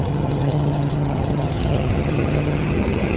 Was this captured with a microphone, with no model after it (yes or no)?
no